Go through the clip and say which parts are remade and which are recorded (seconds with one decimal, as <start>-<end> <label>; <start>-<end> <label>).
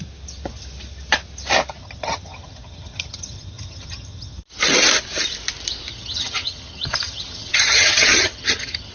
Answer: 0.0-1.8 recorded; 1.8-4.4 remade; 4.4-5.9 recorded; 5.9-8.9 remade